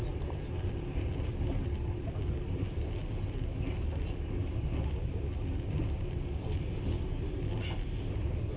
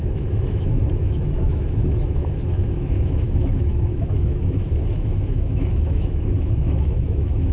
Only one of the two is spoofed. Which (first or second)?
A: second